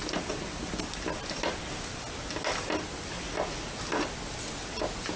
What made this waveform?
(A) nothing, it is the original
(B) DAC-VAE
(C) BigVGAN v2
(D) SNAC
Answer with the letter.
A